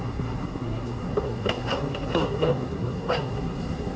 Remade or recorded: remade